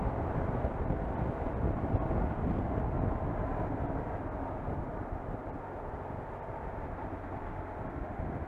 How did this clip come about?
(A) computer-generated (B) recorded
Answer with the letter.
B